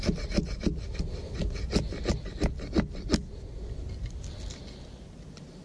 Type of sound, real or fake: real